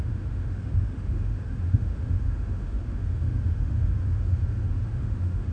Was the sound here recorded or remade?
remade